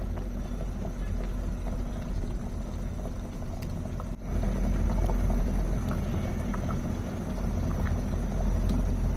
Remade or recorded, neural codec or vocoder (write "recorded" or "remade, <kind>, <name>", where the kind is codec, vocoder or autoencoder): recorded